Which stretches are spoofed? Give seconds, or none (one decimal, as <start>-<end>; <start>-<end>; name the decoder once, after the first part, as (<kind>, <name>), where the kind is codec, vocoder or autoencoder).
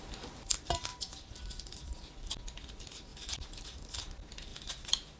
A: 0.9-2.1 (vocoder, BigVGAN v2); 3.1-3.6; 4.5-5.2